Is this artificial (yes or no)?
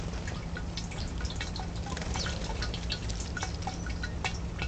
no